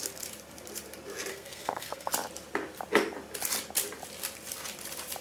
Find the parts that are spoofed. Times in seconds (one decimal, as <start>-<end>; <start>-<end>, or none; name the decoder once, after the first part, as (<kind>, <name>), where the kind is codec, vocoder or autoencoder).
1.3-2.1 (codec, SNAC)